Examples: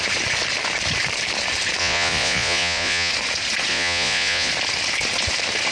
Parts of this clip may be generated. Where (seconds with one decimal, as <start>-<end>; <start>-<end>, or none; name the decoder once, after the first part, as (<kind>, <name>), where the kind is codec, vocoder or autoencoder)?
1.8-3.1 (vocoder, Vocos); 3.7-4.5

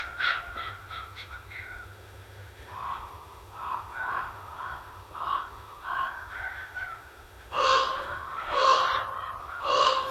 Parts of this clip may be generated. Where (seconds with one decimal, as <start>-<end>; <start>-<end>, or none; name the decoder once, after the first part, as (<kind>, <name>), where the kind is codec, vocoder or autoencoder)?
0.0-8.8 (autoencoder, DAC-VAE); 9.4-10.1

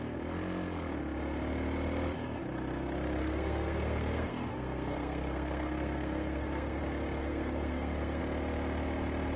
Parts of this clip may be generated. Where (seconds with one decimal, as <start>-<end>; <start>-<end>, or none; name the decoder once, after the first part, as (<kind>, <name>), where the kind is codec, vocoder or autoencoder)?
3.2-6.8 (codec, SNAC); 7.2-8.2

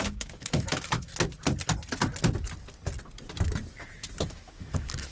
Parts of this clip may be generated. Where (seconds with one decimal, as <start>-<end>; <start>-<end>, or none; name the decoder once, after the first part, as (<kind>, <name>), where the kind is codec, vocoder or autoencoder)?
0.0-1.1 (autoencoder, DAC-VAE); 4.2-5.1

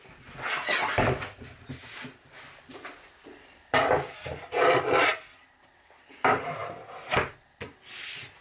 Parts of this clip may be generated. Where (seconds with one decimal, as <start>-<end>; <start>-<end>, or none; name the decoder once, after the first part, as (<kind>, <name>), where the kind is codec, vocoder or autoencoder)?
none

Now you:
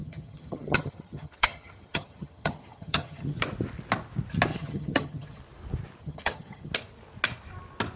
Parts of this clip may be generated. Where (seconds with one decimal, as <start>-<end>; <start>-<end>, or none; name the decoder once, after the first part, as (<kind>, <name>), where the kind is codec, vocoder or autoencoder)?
0.0-3.4 (vocoder, HiFi-GAN); 4.5-5.4; 6.0-6.7

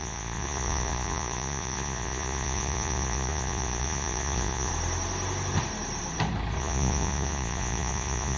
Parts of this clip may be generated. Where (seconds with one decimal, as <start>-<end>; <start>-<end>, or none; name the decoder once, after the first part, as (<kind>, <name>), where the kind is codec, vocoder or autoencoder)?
0.0-4.7 (vocoder, Vocos); 6.6-8.4

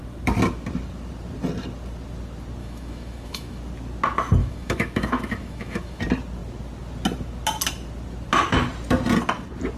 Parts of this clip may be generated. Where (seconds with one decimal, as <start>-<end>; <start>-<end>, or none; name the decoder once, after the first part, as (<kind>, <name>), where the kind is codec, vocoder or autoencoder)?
2.6-3.6 (autoencoder, DAC-VAE); 4.4-6.0